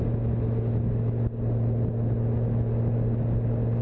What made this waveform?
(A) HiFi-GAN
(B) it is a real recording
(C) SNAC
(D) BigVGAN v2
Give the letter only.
B